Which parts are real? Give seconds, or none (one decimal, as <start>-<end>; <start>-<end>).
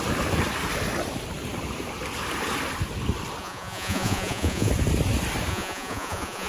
0.0-3.4; 4.7-5.5